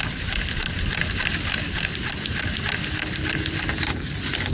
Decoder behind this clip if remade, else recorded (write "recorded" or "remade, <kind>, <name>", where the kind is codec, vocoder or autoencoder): recorded